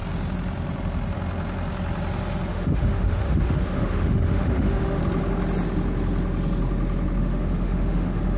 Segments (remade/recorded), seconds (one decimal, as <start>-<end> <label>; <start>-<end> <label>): 0.0-2.5 recorded; 2.5-5.0 remade; 5.0-7.2 recorded; 7.2-8.4 remade